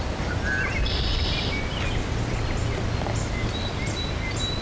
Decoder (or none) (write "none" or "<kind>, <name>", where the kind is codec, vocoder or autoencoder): none